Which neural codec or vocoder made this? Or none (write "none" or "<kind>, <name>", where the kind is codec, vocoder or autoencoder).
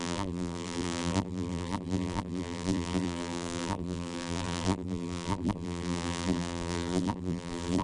vocoder, BigVGAN v2